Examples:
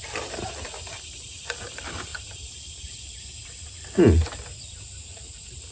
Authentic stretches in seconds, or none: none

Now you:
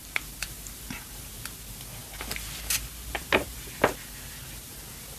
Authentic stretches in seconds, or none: 1.3-5.2